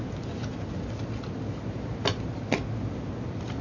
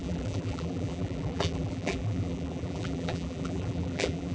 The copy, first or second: second